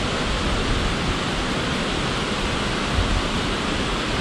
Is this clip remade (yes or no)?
no